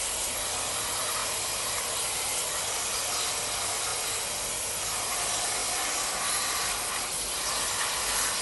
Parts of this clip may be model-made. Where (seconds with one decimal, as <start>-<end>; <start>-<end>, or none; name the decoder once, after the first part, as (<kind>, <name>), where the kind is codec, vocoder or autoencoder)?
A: none